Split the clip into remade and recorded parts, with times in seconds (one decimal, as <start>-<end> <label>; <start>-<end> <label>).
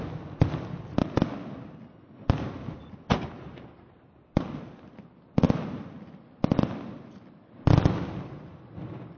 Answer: 0.0-9.2 recorded